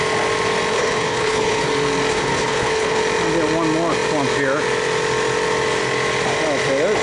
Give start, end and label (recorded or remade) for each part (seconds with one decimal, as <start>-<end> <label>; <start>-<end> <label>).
0.0-0.7 recorded; 0.7-1.7 remade; 1.7-2.1 recorded; 2.1-3.0 remade; 3.0-7.0 recorded